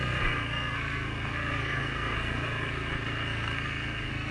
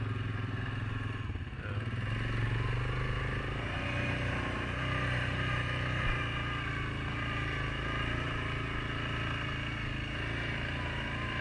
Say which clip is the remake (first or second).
first